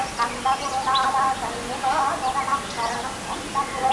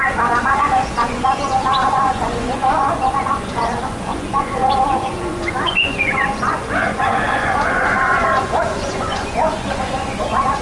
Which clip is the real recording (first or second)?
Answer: first